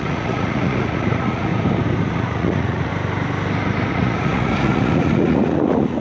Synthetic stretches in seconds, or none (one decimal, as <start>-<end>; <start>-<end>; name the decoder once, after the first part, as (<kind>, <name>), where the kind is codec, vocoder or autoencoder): 0.0-1.5 (vocoder, Vocos); 2.1-2.9; 3.9-6.0